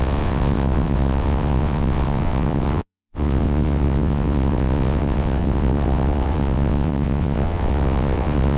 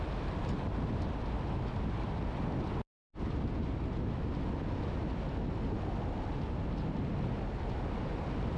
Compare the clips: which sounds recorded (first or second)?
second